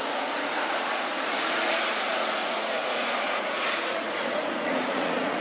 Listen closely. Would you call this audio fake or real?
fake